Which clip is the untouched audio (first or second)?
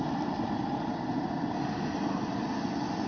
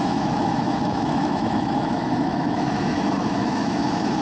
first